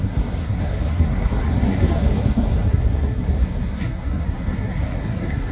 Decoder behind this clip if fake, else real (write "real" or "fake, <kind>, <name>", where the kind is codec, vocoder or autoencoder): fake, codec, SNAC